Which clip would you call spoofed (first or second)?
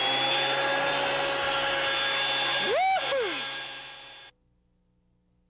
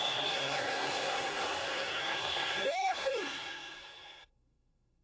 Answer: second